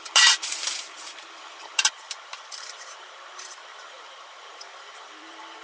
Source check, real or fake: fake